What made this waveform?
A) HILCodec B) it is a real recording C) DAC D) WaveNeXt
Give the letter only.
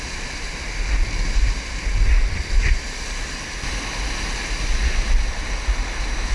B